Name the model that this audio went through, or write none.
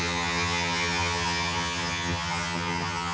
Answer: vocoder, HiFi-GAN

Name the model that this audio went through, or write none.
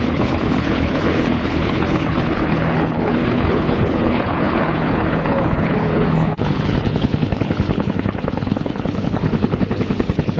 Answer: codec, HILCodec